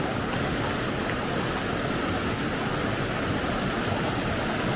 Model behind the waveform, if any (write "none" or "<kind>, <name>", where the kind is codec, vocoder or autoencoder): none